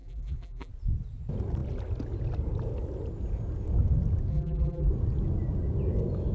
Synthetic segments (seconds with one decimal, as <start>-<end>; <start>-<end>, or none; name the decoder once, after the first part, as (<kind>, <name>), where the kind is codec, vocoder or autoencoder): 0.0-0.7 (vocoder, BigVGAN v2); 4.3-4.9